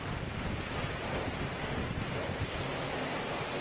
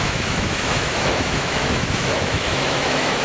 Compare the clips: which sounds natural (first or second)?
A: first